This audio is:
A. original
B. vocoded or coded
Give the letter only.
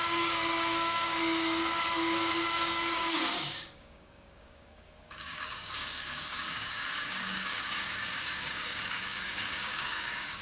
B